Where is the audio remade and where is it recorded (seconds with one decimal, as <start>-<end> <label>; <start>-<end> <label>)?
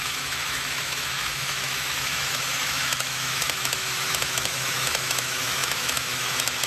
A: 0.0-6.7 remade